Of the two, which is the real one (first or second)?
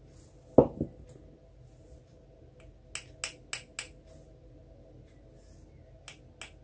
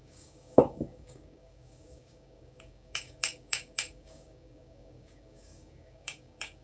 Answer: first